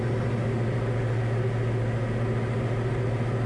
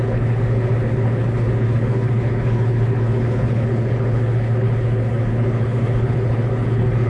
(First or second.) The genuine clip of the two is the first